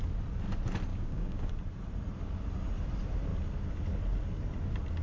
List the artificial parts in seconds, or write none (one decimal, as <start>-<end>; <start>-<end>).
0.9-1.5